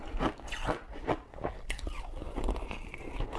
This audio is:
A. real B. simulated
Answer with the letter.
A